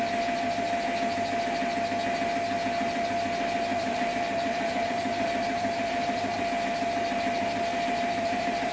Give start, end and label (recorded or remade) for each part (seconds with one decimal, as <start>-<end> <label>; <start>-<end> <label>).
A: 0.0-3.7 recorded; 3.7-6.4 remade; 6.4-7.7 recorded; 7.7-8.7 remade